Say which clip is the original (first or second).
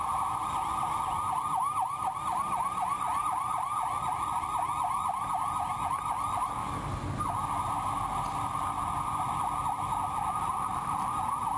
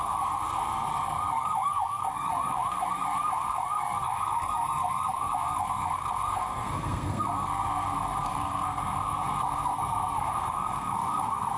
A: first